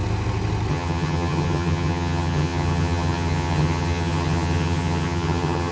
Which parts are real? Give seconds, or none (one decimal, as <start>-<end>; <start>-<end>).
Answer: 0.0-0.7